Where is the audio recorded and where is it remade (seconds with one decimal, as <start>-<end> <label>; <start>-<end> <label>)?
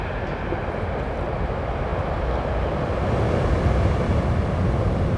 0.0-5.2 recorded